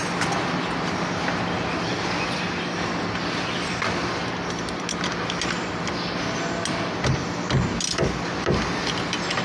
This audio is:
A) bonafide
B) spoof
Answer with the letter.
A